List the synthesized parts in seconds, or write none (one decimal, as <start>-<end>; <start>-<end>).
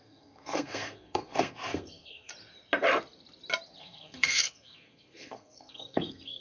0.0-2.3; 3.8-6.4